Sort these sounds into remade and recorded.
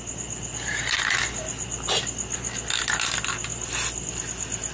recorded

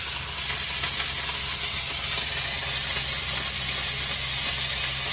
recorded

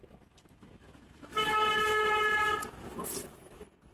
recorded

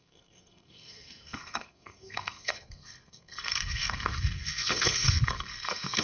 remade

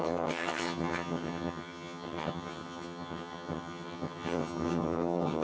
remade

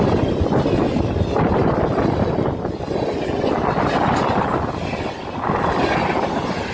recorded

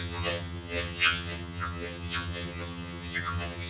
remade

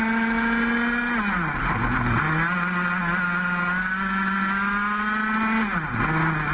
recorded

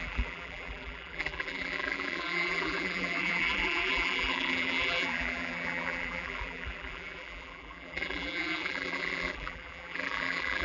remade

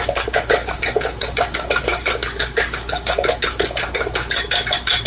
remade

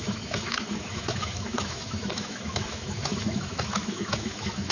remade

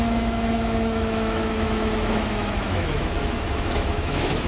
remade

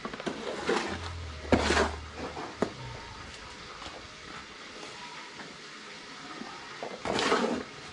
recorded